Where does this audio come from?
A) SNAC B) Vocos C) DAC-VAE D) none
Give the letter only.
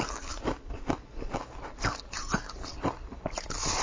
D